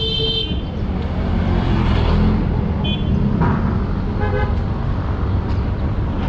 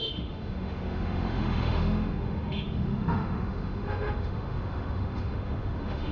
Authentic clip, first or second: first